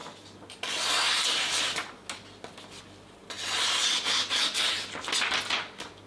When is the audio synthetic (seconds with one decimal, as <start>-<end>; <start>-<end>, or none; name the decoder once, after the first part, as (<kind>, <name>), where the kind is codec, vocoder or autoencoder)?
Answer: none